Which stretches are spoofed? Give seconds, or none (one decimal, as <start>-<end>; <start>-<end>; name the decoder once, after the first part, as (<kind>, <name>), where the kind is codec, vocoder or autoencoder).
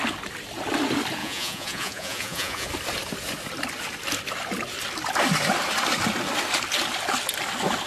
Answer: 1.2-2.7 (vocoder, Vocos)